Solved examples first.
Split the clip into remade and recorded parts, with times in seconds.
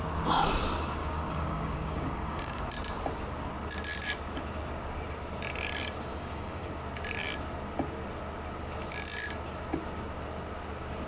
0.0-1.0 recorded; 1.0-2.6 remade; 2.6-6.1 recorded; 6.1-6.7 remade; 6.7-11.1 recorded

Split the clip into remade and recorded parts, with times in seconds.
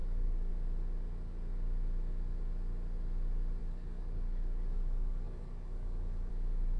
0.0-0.5 remade; 0.5-3.6 recorded; 3.6-6.3 remade; 6.3-6.8 recorded